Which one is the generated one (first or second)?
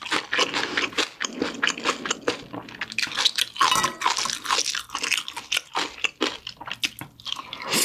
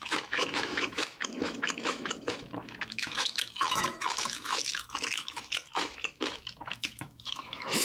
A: second